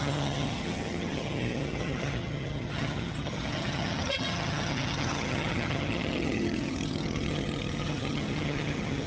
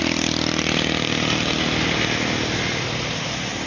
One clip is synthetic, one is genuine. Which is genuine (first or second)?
second